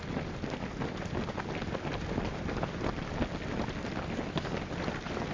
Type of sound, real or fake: real